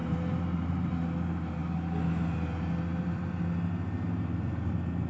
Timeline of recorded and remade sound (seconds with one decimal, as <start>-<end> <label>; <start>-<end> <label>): 0.0-0.9 remade; 0.9-5.1 recorded